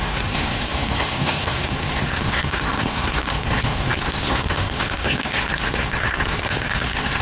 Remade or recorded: remade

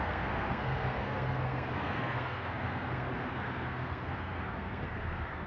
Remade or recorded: remade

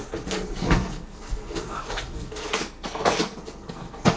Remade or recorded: remade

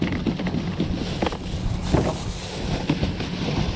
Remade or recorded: recorded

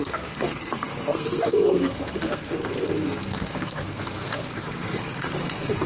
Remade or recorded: remade